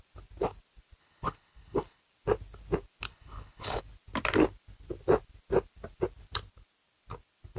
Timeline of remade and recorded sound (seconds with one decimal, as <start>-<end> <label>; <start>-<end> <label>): 0.0-1.0 recorded; 1.0-2.0 remade; 2.0-3.1 recorded; 3.1-3.8 remade; 3.8-7.6 recorded

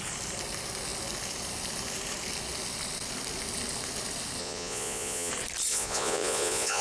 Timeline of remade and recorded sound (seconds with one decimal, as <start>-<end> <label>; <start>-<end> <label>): 0.0-4.4 recorded; 4.4-5.3 remade; 5.3-5.7 recorded; 5.7-6.8 remade

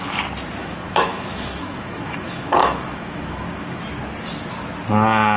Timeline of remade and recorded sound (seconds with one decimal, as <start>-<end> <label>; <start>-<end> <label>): 0.0-0.6 recorded; 0.6-3.8 remade; 3.8-5.4 recorded